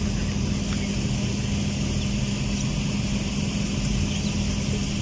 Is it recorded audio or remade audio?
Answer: recorded